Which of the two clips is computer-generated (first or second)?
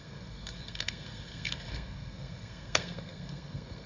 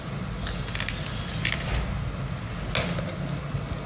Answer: first